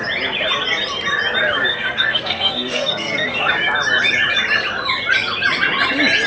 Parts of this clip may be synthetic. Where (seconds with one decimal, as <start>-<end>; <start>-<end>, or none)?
1.7-3.5